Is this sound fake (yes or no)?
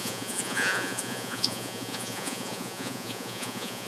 yes